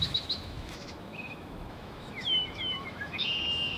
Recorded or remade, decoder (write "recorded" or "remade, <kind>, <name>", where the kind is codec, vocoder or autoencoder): remade, autoencoder, DAC-VAE